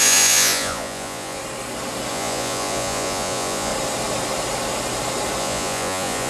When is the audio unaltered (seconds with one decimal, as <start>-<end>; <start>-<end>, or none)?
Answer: 1.4-2.1; 3.7-5.4